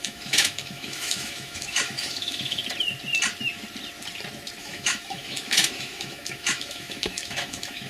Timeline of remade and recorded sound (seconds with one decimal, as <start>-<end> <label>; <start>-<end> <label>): 0.0-2.6 remade; 2.6-4.6 recorded; 4.6-7.9 remade